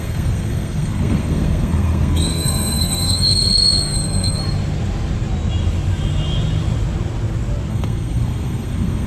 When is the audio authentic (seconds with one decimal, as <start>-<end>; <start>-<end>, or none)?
4.4-7.7